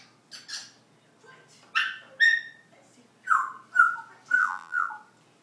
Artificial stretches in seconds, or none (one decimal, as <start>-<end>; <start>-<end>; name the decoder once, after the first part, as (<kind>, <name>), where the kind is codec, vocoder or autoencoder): 4.4-4.9 (vocoder, BigVGAN v2)

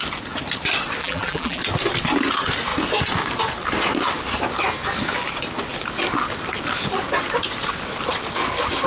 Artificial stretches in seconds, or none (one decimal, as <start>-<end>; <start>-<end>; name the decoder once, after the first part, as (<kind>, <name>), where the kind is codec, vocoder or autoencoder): 1.0-1.6 (vocoder, BigVGAN v2)

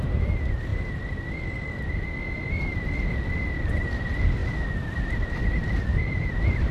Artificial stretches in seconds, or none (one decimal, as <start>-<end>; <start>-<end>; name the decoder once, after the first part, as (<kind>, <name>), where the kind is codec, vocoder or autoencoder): none

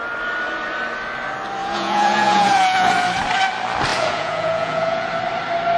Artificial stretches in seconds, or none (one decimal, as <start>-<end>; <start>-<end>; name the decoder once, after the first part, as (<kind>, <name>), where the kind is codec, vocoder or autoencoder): 1.6-2.9 (vocoder, Vocos); 3.9-5.1

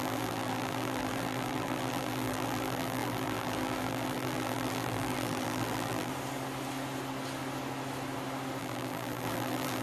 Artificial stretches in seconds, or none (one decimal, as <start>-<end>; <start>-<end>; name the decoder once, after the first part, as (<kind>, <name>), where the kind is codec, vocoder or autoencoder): 0.0-6.1 (vocoder, BigVGAN v2); 8.6-9.8

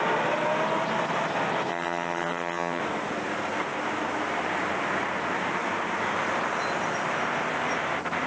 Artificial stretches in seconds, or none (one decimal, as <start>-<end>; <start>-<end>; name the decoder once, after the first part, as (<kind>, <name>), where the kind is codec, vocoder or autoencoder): 1.7-2.8 (vocoder, HiFi-GAN)

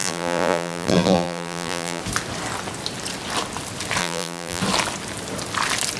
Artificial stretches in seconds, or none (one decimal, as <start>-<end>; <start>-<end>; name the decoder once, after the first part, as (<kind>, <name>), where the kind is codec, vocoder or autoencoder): 0.0-2.0 (vocoder, BigVGAN v2); 4.0-4.6

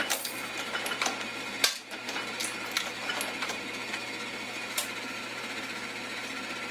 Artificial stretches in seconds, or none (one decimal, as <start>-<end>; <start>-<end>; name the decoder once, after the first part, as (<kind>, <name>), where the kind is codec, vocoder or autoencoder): none